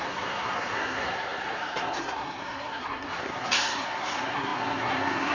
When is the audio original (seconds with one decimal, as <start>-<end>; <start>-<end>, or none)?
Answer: none